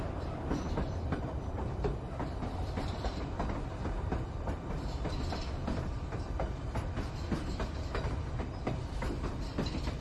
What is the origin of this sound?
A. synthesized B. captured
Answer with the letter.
A